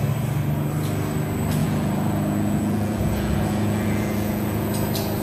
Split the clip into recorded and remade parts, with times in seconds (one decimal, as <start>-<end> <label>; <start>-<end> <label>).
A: 0.0-1.6 recorded; 1.6-4.7 remade; 4.7-5.2 recorded